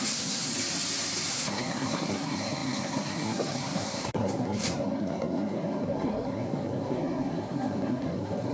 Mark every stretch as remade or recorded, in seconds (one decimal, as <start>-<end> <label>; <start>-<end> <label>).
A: 0.0-0.5 remade; 0.5-1.3 recorded; 1.3-8.5 remade

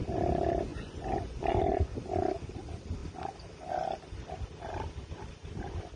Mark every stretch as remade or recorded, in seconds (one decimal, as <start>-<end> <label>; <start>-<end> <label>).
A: 0.0-0.7 recorded; 0.7-2.0 remade; 2.0-6.0 recorded

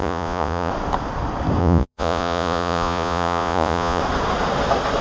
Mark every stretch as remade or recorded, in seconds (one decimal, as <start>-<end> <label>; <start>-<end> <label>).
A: 0.0-0.7 remade; 0.7-1.6 recorded; 1.6-4.0 remade; 4.0-5.0 recorded